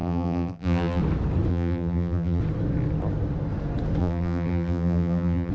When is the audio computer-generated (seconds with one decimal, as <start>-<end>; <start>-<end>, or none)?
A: 0.0-1.0; 1.5-2.4; 4.0-5.5